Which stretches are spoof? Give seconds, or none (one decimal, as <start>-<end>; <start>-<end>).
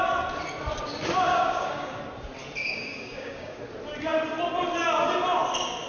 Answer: 1.3-2.0; 2.6-3.6